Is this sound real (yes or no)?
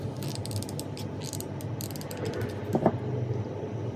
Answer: yes